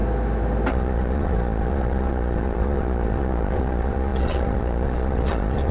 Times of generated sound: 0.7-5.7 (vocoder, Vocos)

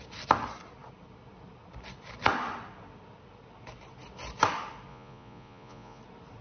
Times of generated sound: 4.9-6.0 (vocoder, Vocos)

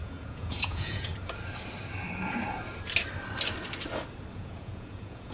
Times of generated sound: 0.0-1.1 (vocoder, Vocos); 4.3-5.3